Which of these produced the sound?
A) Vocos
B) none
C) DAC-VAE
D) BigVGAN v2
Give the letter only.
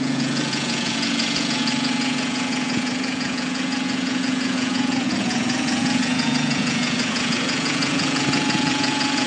A